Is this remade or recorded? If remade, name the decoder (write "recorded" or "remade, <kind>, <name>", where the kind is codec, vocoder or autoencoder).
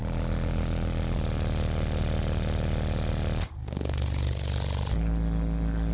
recorded